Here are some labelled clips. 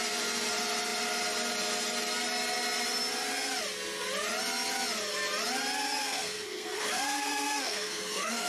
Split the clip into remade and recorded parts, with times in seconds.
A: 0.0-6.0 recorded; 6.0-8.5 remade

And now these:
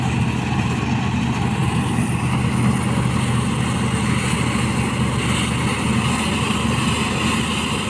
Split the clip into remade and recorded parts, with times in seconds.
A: 0.0-7.9 recorded

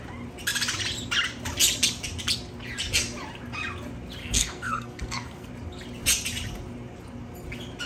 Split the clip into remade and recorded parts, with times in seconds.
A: 0.0-4.2 recorded; 4.2-5.5 remade; 5.5-7.9 recorded

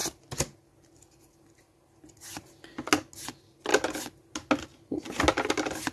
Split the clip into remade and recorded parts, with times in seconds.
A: 0.0-5.9 recorded

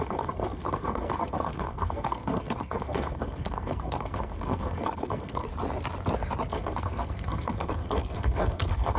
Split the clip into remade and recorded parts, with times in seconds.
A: 0.0-5.5 remade; 5.5-6.5 recorded; 6.5-9.0 remade

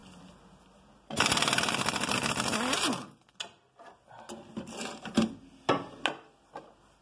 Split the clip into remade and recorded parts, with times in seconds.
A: 0.0-7.0 recorded

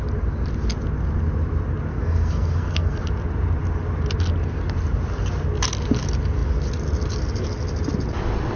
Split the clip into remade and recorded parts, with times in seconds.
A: 0.0-1.9 recorded; 1.9-3.0 remade; 3.0-8.6 recorded